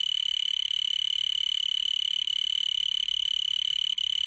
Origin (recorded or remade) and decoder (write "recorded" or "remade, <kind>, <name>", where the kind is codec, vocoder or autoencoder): recorded